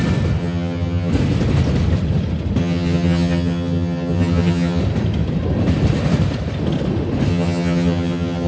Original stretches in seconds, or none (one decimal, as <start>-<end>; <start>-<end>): 0.0-0.4; 1.1-2.6; 4.8-7.3